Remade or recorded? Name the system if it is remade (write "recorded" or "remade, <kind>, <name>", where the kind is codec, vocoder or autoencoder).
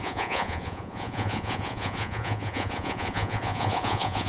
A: remade, vocoder, Vocos